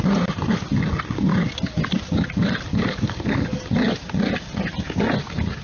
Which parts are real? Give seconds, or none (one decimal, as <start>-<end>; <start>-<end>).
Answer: 0.0-2.7; 3.6-5.6